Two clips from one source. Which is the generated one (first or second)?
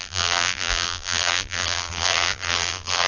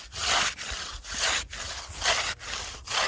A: first